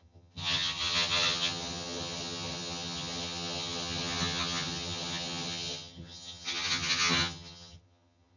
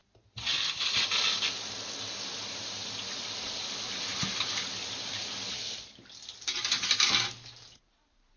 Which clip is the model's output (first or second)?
first